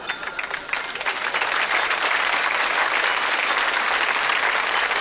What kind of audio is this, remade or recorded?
recorded